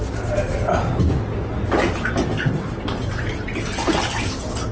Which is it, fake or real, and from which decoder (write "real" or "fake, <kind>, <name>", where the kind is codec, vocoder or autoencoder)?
real